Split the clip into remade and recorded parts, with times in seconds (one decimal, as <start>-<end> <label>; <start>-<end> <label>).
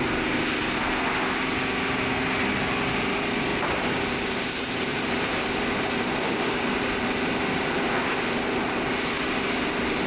0.0-3.5 recorded; 3.5-5.5 remade; 5.5-10.1 recorded